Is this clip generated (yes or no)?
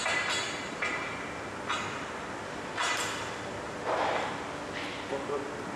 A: no